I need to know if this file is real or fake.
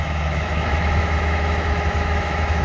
fake